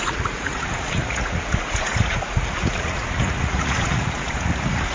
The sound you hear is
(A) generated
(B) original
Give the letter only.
A